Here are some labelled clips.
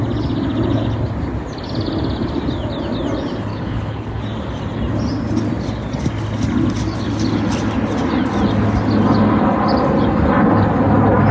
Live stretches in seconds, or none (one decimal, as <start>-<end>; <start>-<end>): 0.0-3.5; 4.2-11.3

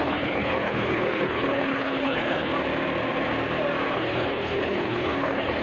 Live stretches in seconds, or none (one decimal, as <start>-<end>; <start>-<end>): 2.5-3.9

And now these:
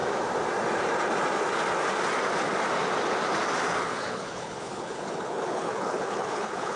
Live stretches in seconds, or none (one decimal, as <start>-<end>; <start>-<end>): 0.0-3.8

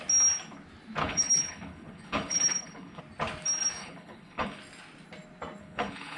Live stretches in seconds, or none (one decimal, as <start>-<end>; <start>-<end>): 0.0-1.0; 3.0-3.8; 4.6-5.6

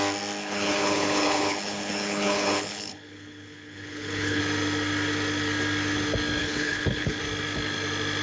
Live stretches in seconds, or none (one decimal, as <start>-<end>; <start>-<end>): 0.0-0.4; 4.4-6.4; 7.2-8.2